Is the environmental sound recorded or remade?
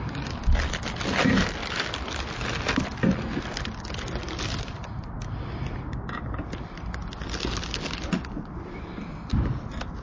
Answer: recorded